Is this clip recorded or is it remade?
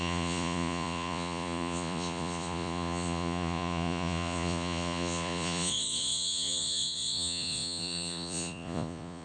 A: remade